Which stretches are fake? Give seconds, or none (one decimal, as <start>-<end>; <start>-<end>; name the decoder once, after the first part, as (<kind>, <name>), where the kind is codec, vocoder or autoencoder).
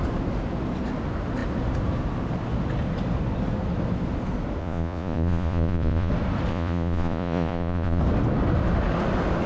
4.6-6.1 (vocoder, Vocos); 6.5-8.0